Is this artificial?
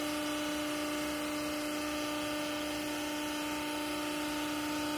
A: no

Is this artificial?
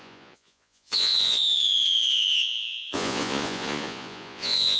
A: yes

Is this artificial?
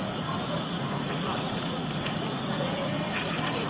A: yes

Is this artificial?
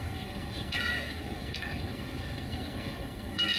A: yes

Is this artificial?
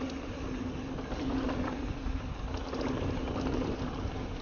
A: no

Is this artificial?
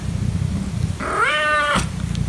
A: no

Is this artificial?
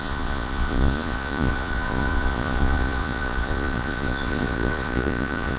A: yes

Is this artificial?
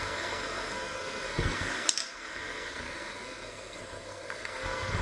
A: yes